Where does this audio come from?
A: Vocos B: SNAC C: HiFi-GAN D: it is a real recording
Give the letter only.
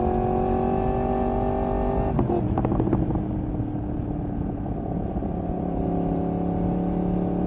D